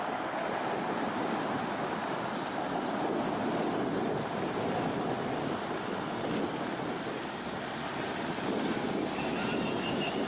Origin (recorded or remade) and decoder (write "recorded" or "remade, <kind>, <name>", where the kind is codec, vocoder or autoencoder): recorded